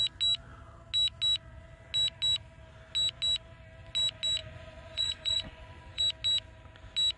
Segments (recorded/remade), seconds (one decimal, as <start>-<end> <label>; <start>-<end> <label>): 0.0-4.4 recorded; 4.4-6.0 remade; 6.0-7.2 recorded